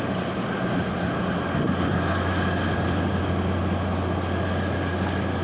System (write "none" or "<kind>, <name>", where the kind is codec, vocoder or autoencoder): none